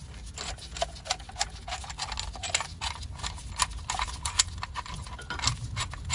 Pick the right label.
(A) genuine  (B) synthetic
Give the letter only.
A